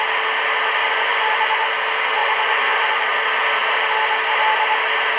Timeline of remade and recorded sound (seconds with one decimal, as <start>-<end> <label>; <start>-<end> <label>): 0.0-0.8 recorded; 0.8-1.7 remade; 1.7-2.2 recorded; 2.2-3.0 remade; 3.0-5.2 recorded

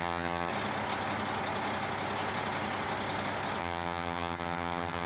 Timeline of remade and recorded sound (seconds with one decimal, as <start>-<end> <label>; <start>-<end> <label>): 0.0-0.5 remade; 0.5-3.6 recorded; 3.6-5.1 remade

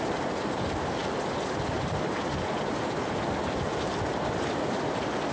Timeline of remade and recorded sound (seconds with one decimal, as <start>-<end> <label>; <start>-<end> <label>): 0.0-5.3 remade

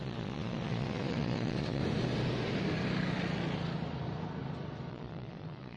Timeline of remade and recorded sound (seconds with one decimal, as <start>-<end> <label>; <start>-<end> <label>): 0.0-1.8 remade; 1.8-4.9 recorded; 4.9-5.8 remade

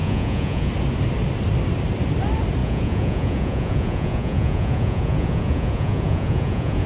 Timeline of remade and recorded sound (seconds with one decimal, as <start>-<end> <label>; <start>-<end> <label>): 0.0-0.7 remade; 0.7-2.6 recorded; 2.6-6.9 remade

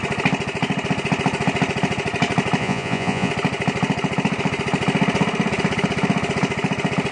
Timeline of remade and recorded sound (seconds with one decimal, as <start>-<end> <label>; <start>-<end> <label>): 0.0-2.6 recorded; 2.6-3.3 remade; 3.3-7.1 recorded

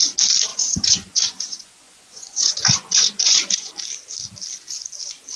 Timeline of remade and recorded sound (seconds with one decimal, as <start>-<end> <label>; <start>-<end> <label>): 0.0-0.5 recorded; 0.5-3.7 remade; 3.7-5.4 recorded